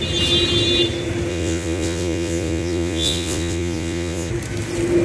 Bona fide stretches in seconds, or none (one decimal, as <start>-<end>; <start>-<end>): 0.0-1.3; 4.3-5.0